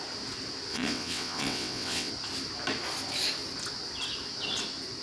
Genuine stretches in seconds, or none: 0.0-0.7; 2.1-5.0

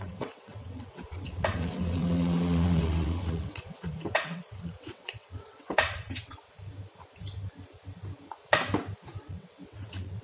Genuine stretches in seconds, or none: 6.4-9.3

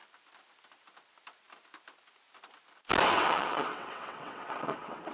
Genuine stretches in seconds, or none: 0.0-3.1

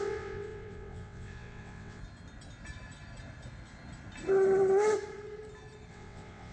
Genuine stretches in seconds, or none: 2.0-5.9

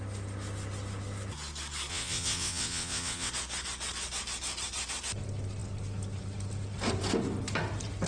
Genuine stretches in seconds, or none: 0.0-1.9; 3.3-8.1

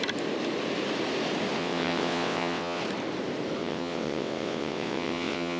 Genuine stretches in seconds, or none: 0.0-1.6; 2.8-3.6